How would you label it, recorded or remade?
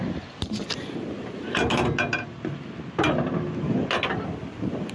recorded